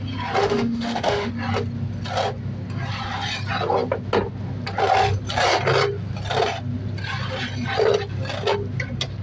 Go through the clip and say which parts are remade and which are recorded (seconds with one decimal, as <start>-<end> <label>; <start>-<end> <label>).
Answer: 0.0-0.4 recorded; 0.4-1.3 remade; 1.3-9.2 recorded